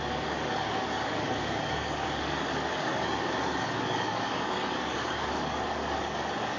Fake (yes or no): yes